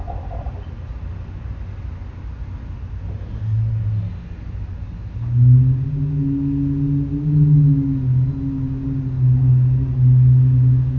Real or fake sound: real